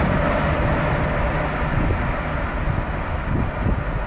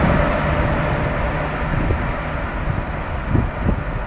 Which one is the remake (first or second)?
first